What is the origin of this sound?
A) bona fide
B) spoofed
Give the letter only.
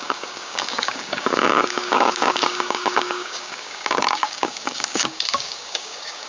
B